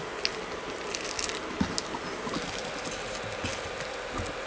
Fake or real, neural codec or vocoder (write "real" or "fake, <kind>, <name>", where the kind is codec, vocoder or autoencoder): real